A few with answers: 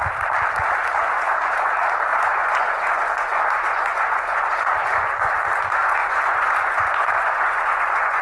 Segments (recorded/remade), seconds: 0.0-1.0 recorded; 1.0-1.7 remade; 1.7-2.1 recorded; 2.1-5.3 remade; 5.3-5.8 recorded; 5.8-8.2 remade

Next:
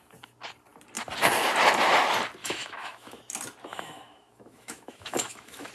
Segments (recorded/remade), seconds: 0.0-2.4 recorded; 2.4-3.2 remade; 3.2-3.7 recorded; 3.7-5.7 remade

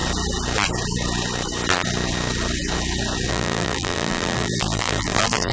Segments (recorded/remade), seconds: 0.0-3.3 recorded; 3.3-5.5 remade

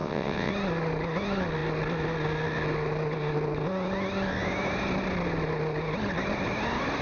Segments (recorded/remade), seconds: 0.0-0.5 remade; 0.5-7.0 recorded

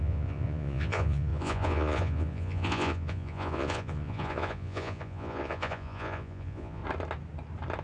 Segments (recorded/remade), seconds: 0.0-6.8 remade; 6.8-7.8 recorded

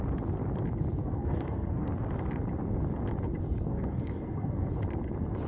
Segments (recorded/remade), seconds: 0.0-1.0 recorded; 1.0-1.9 remade; 1.9-3.7 recorded; 3.7-4.7 remade; 4.7-5.5 recorded

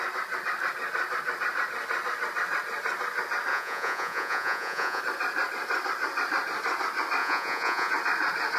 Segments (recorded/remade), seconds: 0.0-3.5 recorded; 3.5-5.0 remade; 5.0-7.2 recorded; 7.2-7.9 remade; 7.9-8.6 recorded